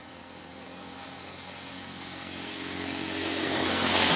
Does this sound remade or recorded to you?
remade